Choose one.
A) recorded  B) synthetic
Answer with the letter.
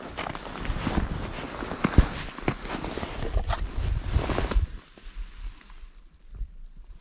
A